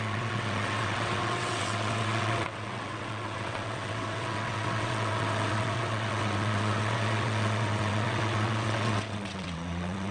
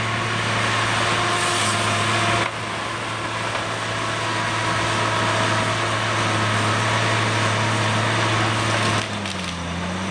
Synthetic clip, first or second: first